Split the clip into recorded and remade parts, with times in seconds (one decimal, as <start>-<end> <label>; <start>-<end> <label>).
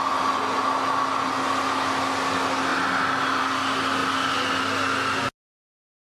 0.0-6.1 recorded